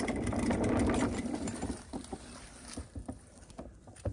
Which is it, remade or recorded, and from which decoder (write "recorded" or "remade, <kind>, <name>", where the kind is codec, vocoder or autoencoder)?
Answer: remade, vocoder, BigVGAN v2